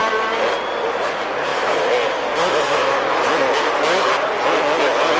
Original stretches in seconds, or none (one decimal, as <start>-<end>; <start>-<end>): 0.0-5.2